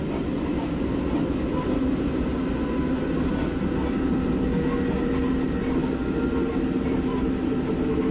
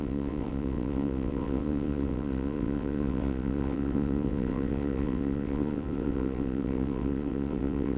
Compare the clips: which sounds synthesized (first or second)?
second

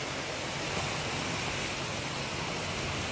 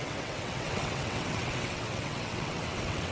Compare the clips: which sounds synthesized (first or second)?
second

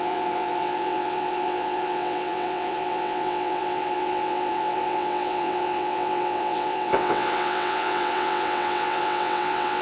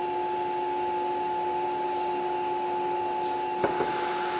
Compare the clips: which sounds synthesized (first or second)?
first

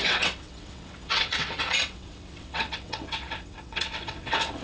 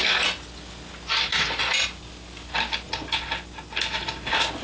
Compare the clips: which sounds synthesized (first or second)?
first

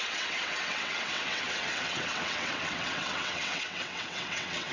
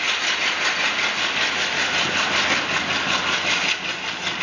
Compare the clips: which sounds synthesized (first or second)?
first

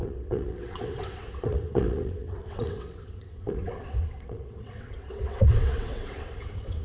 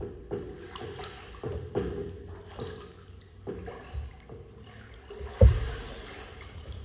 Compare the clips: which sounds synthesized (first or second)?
first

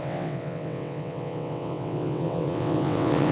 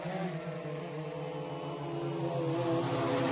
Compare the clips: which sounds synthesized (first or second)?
first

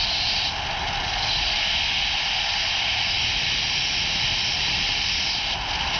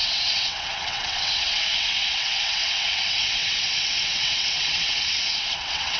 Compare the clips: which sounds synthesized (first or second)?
second